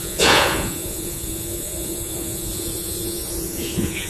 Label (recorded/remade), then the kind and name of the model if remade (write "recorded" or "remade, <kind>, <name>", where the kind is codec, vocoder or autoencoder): remade, vocoder, Vocos